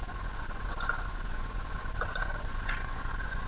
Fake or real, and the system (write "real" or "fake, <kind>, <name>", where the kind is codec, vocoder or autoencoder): fake, vocoder, Vocos